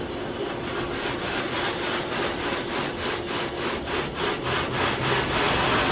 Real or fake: real